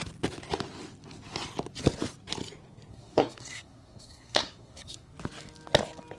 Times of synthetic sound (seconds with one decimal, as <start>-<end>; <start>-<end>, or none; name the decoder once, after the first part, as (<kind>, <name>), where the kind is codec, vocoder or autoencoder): 2.9-5.1 (codec, SNAC)